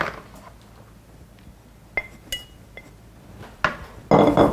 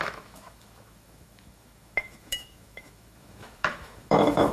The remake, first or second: second